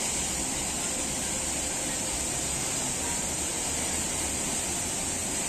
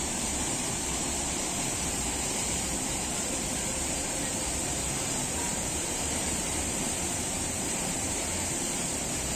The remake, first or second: second